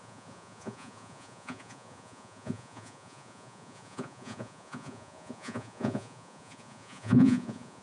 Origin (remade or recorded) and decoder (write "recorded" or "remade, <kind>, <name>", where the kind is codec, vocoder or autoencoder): remade, vocoder, Vocos